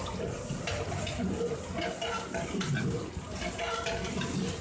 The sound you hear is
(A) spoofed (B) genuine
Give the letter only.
B